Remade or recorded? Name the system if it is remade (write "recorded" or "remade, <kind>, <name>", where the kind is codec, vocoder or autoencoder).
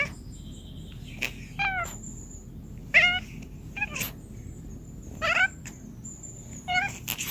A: recorded